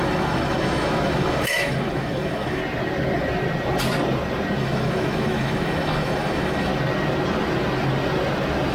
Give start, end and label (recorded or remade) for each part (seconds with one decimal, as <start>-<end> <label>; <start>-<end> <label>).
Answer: 0.0-2.6 remade; 2.6-4.6 recorded; 4.6-6.7 remade; 6.7-8.7 recorded

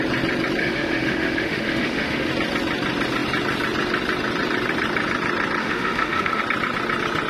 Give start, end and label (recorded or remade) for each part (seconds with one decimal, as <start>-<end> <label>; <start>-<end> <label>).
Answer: 0.0-0.6 recorded; 0.6-2.3 remade; 2.3-5.6 recorded; 5.6-6.4 remade; 6.4-7.3 recorded

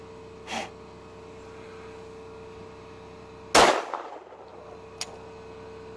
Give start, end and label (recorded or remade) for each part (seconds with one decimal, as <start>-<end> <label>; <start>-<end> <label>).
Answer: 0.0-6.0 recorded

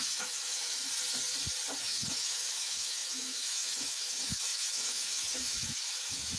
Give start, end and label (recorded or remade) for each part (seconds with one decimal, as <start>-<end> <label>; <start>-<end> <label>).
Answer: 0.0-0.8 remade; 0.8-1.8 recorded; 1.8-6.4 remade

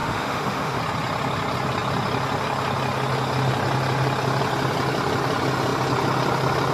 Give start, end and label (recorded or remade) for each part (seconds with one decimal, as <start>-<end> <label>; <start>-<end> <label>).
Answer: 0.0-0.8 remade; 0.8-6.7 recorded

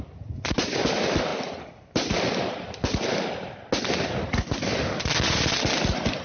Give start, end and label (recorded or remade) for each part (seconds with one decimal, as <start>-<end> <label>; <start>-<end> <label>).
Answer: 0.0-6.2 recorded

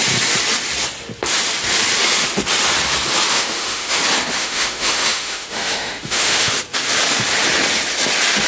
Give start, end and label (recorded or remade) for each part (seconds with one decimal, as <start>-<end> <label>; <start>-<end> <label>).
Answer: 0.0-3.3 recorded; 3.3-4.0 remade; 4.0-4.4 recorded; 4.4-6.5 remade; 6.5-8.5 recorded

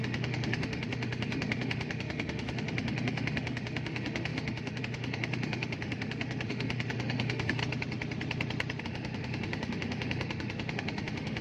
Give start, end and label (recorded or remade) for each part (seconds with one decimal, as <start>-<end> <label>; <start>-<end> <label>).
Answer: 0.0-7.6 remade; 7.6-8.8 recorded; 8.8-11.4 remade